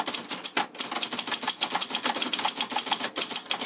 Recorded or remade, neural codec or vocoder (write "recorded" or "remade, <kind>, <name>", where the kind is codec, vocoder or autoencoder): recorded